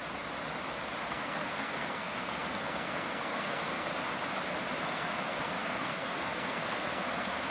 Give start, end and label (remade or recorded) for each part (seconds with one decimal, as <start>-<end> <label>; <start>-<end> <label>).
0.0-1.1 recorded; 1.1-3.9 remade; 3.9-4.8 recorded; 4.8-7.5 remade